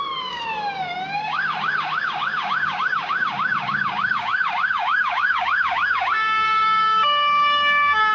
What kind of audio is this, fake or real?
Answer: fake